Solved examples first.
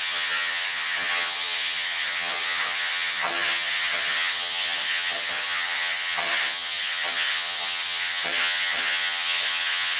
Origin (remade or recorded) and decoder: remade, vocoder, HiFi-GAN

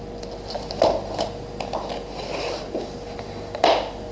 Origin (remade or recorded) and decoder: recorded